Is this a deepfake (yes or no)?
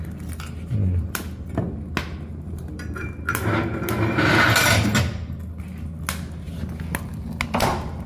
no